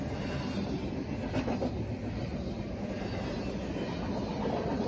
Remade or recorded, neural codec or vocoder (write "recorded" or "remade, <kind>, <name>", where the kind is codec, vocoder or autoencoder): recorded